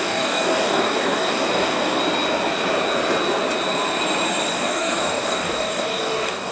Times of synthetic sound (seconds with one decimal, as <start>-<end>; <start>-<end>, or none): 0.0-2.0; 4.5-6.5